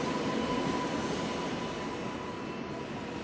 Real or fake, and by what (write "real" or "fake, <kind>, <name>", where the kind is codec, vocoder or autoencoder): real